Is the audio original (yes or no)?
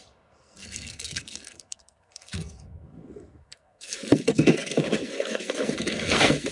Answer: no